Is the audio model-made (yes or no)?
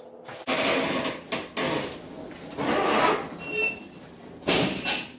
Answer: no